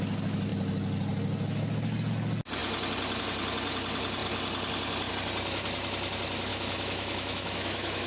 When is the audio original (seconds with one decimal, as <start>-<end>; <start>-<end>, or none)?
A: 0.0-6.5